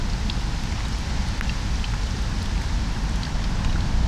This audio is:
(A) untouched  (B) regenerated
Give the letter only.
A